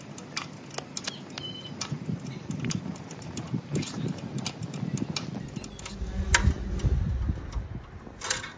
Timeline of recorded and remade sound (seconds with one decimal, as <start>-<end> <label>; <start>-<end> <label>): 0.0-8.6 recorded